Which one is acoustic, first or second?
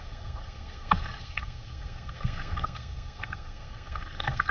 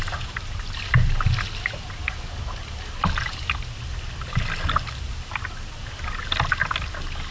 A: second